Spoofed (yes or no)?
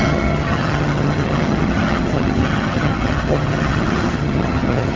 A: yes